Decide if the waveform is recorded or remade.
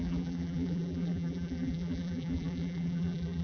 remade